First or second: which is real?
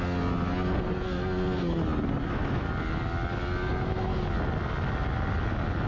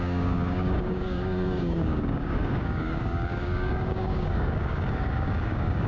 first